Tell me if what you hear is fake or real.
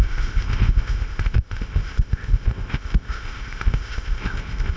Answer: fake